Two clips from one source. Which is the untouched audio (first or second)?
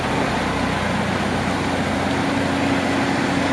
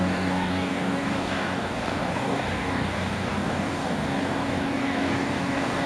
first